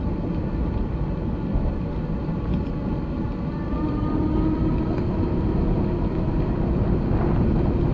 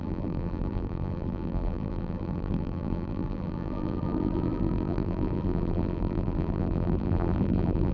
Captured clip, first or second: first